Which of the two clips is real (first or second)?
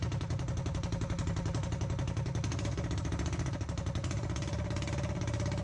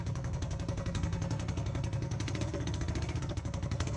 first